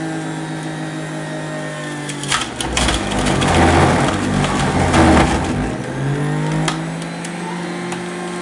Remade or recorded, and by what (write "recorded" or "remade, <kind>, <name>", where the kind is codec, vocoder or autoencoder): recorded